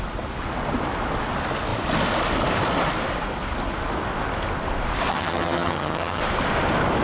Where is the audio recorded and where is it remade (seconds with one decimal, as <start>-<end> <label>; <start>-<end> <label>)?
0.0-5.1 recorded; 5.1-6.2 remade; 6.2-7.0 recorded